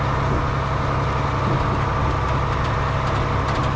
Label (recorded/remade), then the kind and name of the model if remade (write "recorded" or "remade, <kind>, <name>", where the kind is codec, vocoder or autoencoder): recorded